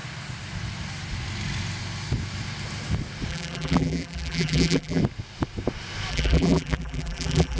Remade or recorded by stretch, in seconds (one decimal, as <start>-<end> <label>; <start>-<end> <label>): 0.0-3.3 recorded; 3.3-5.0 remade; 5.0-6.1 recorded; 6.1-7.6 remade